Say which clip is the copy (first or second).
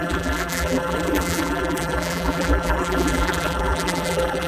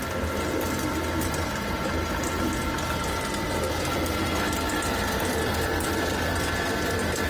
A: first